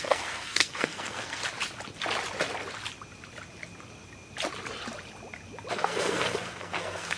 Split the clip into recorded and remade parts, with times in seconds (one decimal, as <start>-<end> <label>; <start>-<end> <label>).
0.0-1.4 remade; 1.4-5.7 recorded; 5.7-7.2 remade

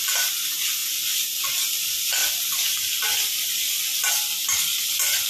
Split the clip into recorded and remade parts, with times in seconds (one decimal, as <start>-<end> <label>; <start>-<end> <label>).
0.0-5.3 recorded

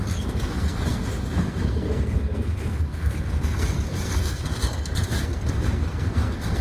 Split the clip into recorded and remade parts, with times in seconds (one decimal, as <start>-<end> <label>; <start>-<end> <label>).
0.0-6.6 remade

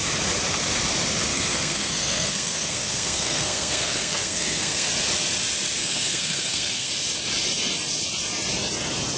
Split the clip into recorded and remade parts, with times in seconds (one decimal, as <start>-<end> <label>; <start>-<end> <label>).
0.0-1.3 recorded; 1.3-4.9 remade; 4.9-5.8 recorded; 5.8-6.9 remade; 6.9-9.2 recorded

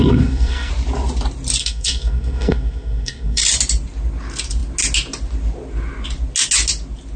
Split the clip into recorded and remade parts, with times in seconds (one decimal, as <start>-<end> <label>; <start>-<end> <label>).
0.0-0.7 remade; 0.7-1.6 recorded; 1.6-3.4 remade; 3.4-7.2 recorded